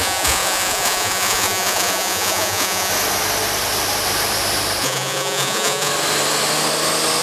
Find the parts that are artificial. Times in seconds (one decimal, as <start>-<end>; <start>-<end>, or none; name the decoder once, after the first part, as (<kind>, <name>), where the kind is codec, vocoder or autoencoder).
0.0-2.9 (vocoder, Vocos); 4.8-5.9